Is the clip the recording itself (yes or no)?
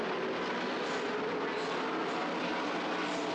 yes